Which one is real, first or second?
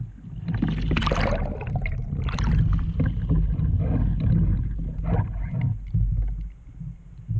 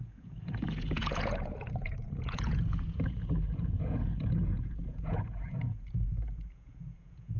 first